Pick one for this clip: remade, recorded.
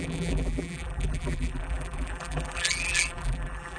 remade